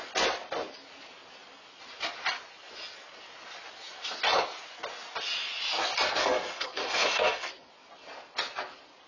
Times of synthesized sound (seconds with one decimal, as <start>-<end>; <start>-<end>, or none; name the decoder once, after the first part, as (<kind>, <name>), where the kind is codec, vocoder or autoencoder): 6.2-7.5 (codec, SNAC)